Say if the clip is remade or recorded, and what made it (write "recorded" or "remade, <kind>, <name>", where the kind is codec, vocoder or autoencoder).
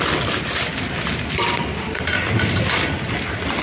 recorded